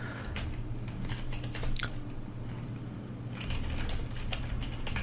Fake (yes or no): no